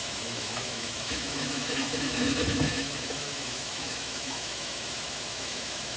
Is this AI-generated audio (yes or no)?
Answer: yes